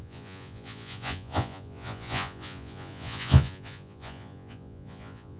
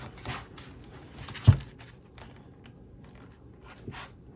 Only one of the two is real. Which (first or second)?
second